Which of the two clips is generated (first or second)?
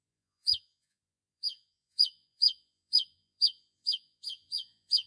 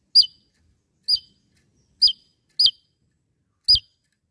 first